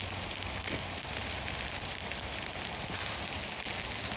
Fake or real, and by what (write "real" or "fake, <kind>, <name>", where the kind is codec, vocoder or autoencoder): real